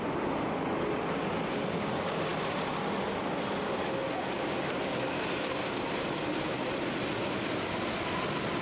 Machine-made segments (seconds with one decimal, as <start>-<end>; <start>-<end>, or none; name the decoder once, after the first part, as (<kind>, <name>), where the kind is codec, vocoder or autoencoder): none